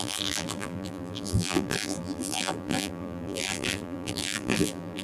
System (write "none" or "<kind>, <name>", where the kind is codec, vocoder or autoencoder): vocoder, BigVGAN v2